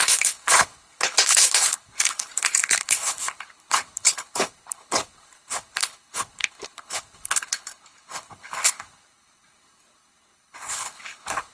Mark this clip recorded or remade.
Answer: remade